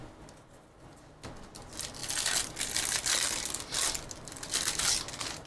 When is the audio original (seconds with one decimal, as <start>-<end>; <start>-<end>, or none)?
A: 0.0-5.5